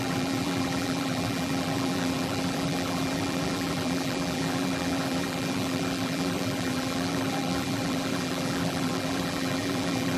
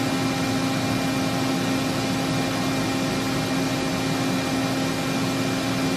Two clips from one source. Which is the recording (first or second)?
second